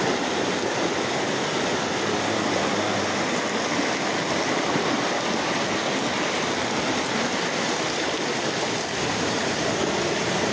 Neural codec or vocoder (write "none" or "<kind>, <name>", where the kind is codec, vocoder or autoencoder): none